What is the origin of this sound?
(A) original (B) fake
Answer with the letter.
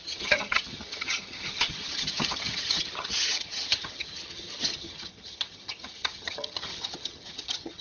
B